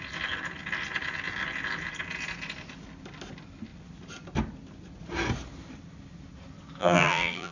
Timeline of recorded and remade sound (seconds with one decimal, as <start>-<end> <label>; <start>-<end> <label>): 0.0-6.8 recorded; 6.8-7.5 remade